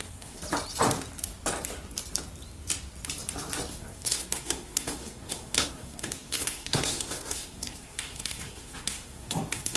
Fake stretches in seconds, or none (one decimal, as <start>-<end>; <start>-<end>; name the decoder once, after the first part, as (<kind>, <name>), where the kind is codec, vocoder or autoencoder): 0.0-0.4 (codec, SNAC); 3.7-9.8